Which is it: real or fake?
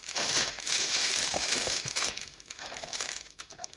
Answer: fake